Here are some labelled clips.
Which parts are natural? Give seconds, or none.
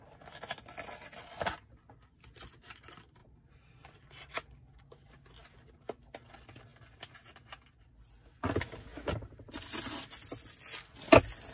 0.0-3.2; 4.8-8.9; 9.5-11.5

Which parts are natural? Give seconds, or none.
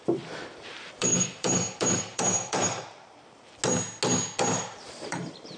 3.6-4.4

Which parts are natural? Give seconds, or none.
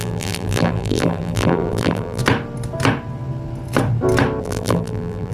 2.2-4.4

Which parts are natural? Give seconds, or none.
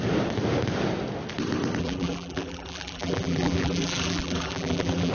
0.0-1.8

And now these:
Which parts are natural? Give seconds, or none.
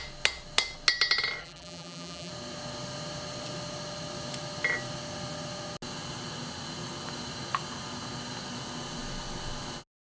0.0-1.4; 2.3-10.0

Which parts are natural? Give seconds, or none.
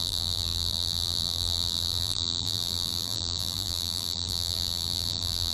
none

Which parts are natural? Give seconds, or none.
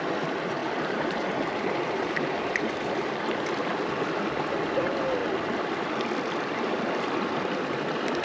0.0-0.6; 2.7-8.2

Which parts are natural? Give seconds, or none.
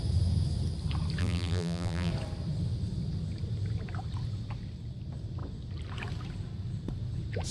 0.0-1.2; 2.1-7.5